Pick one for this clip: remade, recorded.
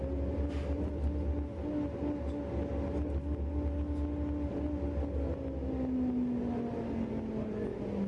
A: recorded